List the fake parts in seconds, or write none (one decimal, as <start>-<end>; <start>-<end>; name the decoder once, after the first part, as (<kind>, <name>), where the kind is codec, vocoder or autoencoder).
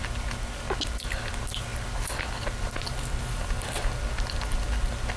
none